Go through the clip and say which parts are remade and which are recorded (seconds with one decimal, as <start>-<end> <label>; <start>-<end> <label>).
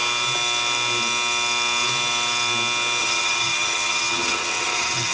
0.0-3.0 recorded; 3.0-5.1 remade